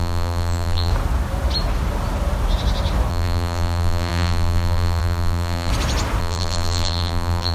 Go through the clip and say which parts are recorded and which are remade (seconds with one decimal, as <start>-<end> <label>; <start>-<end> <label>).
0.0-0.9 remade; 0.9-3.1 recorded; 3.1-5.7 remade; 5.7-6.2 recorded; 6.2-7.5 remade

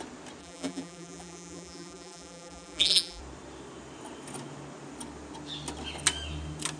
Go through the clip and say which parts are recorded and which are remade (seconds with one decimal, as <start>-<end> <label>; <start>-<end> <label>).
0.0-0.4 recorded; 0.4-3.2 remade; 3.2-6.8 recorded

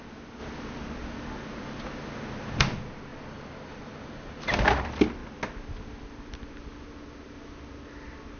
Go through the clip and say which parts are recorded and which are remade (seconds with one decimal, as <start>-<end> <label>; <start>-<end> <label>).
0.0-3.1 recorded; 3.1-4.8 remade; 4.8-8.4 recorded

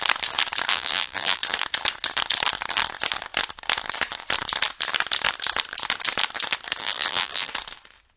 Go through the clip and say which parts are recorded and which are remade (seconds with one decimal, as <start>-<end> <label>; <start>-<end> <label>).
0.0-0.7 recorded; 0.7-1.4 remade; 1.4-6.8 recorded; 6.8-7.5 remade; 7.5-8.2 recorded

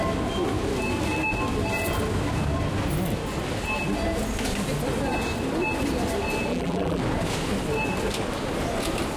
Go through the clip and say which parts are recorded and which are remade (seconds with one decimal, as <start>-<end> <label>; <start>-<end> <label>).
0.0-6.5 recorded; 6.5-7.0 remade; 7.0-9.2 recorded